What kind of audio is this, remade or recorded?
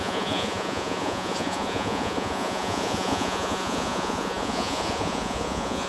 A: remade